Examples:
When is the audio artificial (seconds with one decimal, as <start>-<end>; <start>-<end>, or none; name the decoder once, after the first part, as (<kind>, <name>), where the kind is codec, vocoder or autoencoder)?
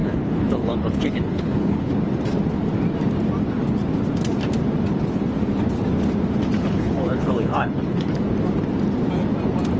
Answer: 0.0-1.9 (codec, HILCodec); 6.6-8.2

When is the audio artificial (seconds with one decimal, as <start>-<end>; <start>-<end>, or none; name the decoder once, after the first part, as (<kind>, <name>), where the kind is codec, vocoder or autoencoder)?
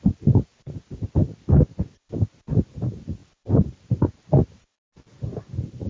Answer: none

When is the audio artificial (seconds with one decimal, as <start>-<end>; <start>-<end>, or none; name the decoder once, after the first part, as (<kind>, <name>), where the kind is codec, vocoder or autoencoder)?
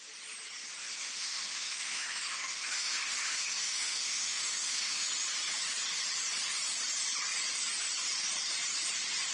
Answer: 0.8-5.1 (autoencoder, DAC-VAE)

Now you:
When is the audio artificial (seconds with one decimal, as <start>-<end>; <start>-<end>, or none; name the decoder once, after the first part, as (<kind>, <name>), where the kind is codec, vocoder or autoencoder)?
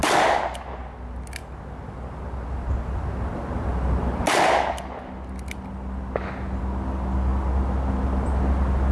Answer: none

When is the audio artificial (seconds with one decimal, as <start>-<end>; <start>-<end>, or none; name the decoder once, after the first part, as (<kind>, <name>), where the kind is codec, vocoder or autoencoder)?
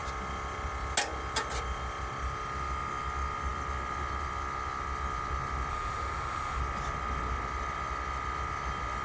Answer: 5.7-6.6 (autoencoder, DAC-VAE)